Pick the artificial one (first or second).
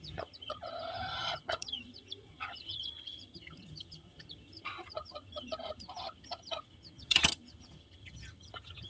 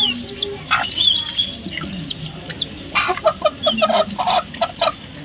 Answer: first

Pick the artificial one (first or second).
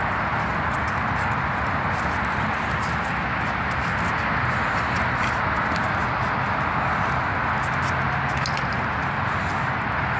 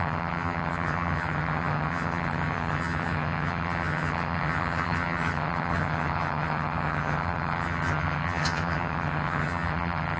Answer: second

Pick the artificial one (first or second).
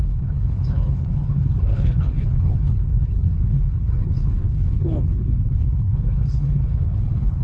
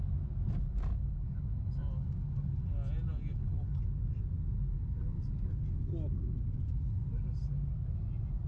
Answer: first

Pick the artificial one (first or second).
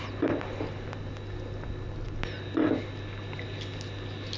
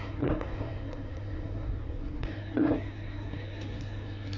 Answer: second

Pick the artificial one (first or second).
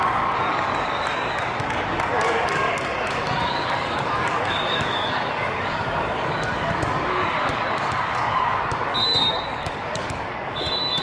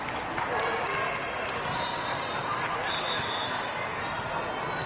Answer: first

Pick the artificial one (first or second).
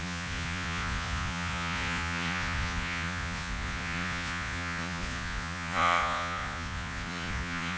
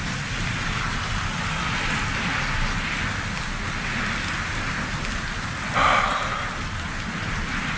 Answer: first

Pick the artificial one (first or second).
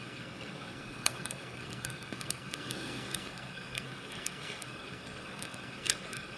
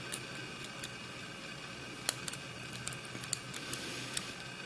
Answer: first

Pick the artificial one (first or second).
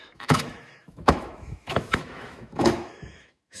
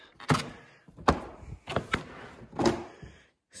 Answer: first